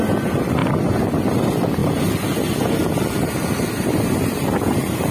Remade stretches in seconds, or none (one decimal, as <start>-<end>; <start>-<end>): none